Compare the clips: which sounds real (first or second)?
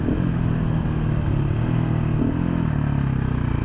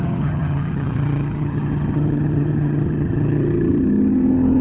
first